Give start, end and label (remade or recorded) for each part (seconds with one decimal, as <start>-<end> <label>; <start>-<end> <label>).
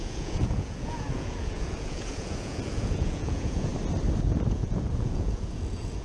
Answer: 0.0-3.7 remade; 3.7-4.3 recorded; 4.3-6.0 remade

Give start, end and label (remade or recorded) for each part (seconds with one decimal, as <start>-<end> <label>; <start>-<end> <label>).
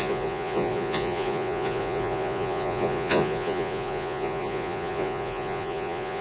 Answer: 0.0-6.2 remade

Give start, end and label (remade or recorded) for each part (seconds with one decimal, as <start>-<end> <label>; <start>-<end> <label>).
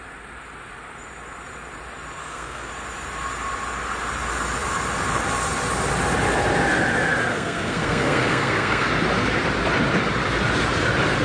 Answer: 0.0-2.2 recorded; 2.2-2.7 remade; 2.7-7.3 recorded; 7.3-8.9 remade; 8.9-11.2 recorded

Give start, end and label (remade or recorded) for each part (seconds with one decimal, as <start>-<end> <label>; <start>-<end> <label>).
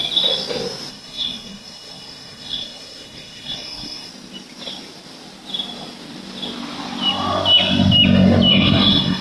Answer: 0.0-0.9 recorded; 0.9-4.1 remade; 4.1-8.5 recorded; 8.5-9.2 remade